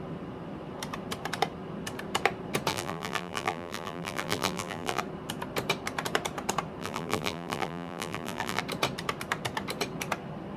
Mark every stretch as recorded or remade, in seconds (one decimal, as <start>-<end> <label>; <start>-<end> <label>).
0.0-2.7 recorded; 2.7-5.0 remade; 5.0-6.8 recorded; 6.8-8.6 remade; 8.6-10.6 recorded